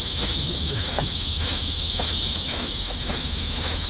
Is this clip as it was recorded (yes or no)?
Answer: no